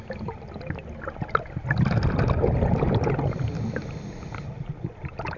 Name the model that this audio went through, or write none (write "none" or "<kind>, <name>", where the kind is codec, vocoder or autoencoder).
none